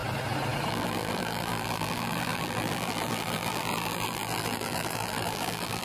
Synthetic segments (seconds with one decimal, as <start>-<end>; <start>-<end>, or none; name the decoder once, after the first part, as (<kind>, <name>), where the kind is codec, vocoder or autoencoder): 0.7-5.8 (vocoder, BigVGAN v2)